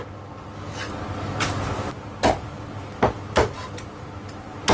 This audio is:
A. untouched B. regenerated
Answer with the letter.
A